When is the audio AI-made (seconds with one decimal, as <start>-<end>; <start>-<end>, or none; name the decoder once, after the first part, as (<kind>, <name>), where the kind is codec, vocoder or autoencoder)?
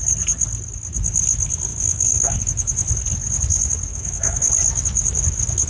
1.7-2.4 (autoencoder, DAC-VAE); 3.9-4.5